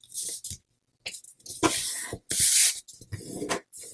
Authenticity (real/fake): real